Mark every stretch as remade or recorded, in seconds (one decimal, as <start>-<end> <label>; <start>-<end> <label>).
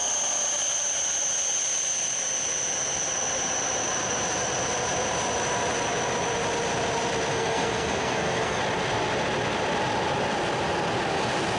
0.0-7.3 recorded; 7.3-8.6 remade; 8.6-11.6 recorded